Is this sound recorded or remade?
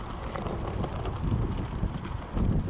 recorded